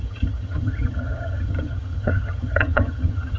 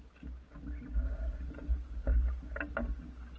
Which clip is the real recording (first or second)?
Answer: second